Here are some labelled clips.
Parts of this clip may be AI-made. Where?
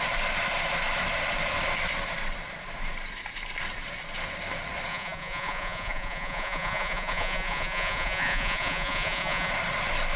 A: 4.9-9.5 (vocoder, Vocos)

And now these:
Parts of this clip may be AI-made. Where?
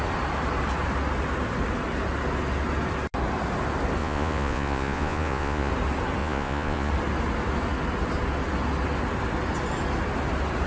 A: 4.0-5.7 (vocoder, Vocos); 6.2-6.9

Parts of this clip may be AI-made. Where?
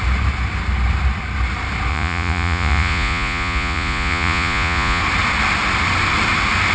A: 1.9-5.0 (vocoder, Vocos)